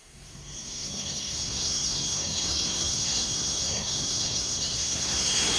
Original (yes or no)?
no